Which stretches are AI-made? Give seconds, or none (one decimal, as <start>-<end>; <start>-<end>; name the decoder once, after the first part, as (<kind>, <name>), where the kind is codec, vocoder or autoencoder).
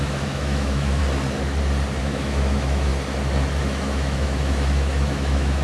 0.0-1.0 (autoencoder, DAC-VAE); 2.0-2.9; 3.6-5.6